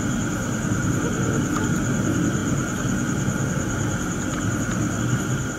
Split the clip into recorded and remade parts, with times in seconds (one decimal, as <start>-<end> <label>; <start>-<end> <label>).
0.0-5.6 recorded